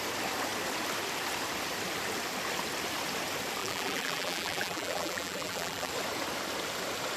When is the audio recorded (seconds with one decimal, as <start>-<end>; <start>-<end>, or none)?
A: 0.0-3.6; 5.9-7.2

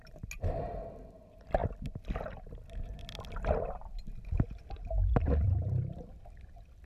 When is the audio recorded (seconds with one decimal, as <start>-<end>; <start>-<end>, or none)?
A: 0.0-6.9

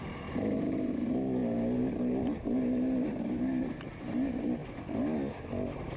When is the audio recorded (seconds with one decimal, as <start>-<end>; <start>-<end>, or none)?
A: 4.6-6.0